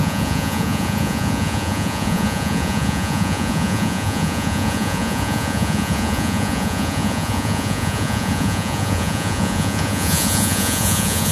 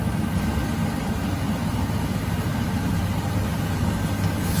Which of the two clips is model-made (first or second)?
first